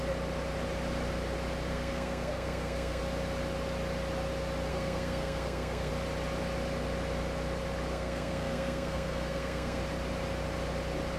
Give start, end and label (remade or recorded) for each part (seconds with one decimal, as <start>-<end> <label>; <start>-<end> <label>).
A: 0.0-1.7 recorded; 1.7-3.0 remade; 3.0-4.7 recorded; 4.7-5.9 remade; 5.9-7.9 recorded; 7.9-9.8 remade; 9.8-11.2 recorded